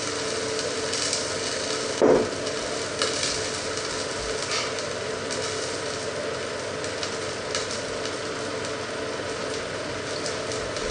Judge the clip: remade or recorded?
recorded